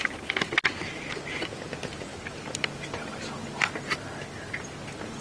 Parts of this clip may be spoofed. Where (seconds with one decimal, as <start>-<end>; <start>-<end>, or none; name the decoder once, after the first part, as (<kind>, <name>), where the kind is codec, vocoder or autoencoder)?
none